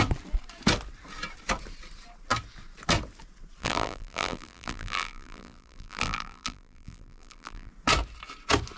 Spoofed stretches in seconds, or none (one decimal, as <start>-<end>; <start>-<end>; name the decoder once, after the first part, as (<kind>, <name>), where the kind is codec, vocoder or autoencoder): 3.6-7.7 (vocoder, BigVGAN v2)